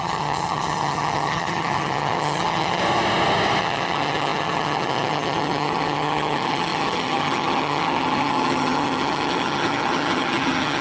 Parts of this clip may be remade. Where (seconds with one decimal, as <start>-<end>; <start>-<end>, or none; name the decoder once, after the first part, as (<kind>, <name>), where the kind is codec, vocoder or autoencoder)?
0.0-2.8 (vocoder, HiFi-GAN); 3.6-10.8